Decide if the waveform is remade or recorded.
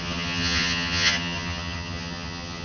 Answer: remade